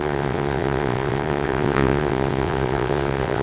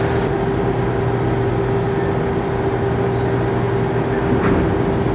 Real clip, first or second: second